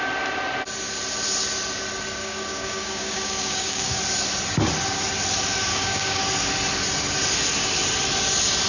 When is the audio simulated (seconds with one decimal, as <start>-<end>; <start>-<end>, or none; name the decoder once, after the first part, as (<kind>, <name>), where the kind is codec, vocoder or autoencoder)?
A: 2.2-4.0 (codec, DAC); 5.7-6.2